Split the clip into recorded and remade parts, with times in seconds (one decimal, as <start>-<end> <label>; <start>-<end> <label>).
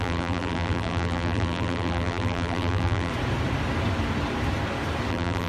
0.0-3.1 remade; 3.1-5.1 recorded; 5.1-5.5 remade